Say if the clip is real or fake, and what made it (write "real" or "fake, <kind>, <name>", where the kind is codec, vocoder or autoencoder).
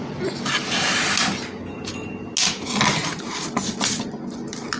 real